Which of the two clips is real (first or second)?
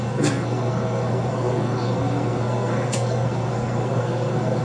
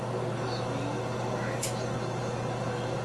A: second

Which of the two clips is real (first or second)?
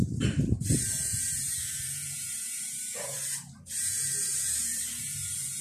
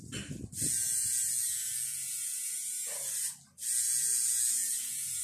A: second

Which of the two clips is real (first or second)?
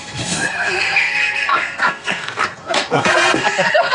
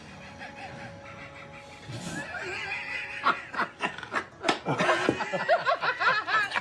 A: second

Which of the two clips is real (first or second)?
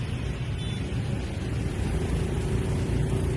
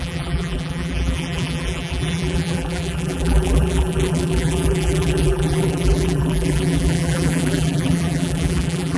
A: first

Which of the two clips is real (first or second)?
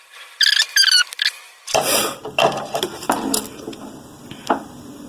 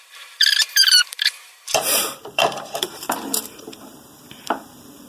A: first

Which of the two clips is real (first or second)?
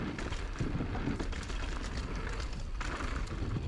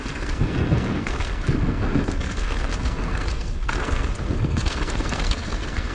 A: first